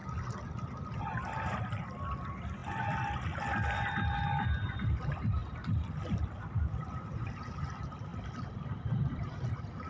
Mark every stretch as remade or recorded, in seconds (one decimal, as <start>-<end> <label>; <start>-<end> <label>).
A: 0.0-1.0 recorded; 1.0-5.4 remade; 5.4-6.4 recorded; 6.4-9.9 remade